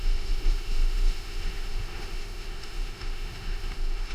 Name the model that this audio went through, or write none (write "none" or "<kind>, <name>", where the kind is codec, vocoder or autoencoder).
autoencoder, DAC-VAE